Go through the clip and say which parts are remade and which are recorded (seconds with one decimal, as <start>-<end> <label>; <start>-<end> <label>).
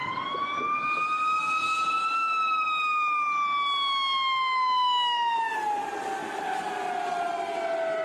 0.0-8.0 recorded